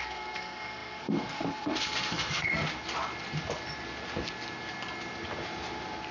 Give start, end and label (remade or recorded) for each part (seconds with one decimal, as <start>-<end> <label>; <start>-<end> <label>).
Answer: 0.0-2.5 remade; 2.5-6.1 recorded